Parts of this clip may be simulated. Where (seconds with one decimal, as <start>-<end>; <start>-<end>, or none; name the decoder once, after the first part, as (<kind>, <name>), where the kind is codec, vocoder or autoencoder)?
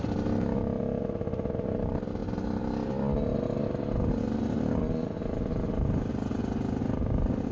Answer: none